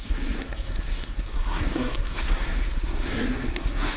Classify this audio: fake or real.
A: fake